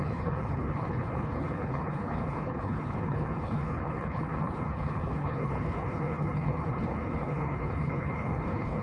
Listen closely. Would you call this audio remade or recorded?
remade